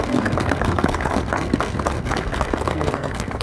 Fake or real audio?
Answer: fake